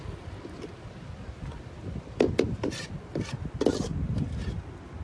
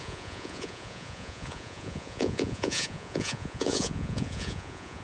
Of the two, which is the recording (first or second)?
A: first